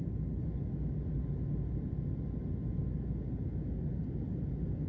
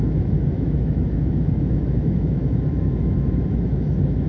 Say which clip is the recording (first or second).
first